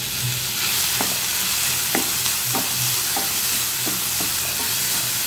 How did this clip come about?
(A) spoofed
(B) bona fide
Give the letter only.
B